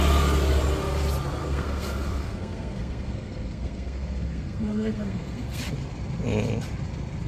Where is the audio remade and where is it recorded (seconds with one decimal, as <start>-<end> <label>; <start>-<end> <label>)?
0.0-1.4 recorded; 1.4-5.6 remade; 5.6-7.3 recorded